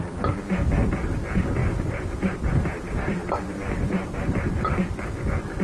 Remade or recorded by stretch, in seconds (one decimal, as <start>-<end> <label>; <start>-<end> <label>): 0.0-1.6 recorded; 1.6-5.0 remade; 5.0-5.6 recorded